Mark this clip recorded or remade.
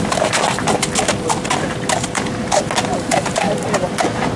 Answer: recorded